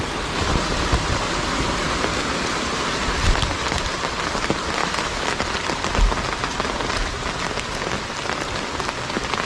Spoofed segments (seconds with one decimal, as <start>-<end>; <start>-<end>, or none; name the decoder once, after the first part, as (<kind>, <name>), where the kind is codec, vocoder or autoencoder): 4.8-5.4 (autoencoder, DAC-VAE)